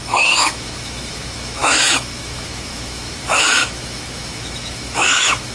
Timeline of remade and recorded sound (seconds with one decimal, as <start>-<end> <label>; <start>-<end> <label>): 0.0-5.5 remade